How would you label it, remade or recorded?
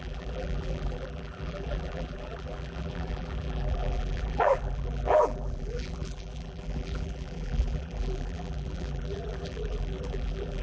remade